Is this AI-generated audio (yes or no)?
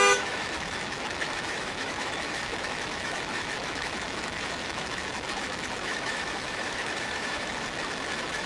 yes